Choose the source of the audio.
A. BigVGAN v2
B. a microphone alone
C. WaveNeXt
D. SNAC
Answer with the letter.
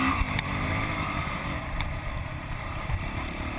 B